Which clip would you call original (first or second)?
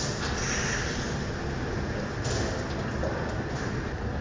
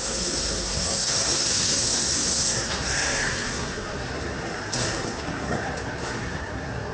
first